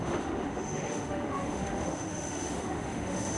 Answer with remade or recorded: remade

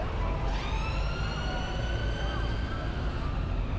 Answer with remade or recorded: recorded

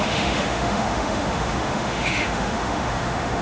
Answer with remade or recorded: remade